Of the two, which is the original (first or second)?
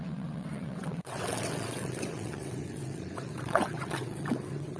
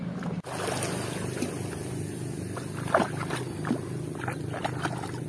second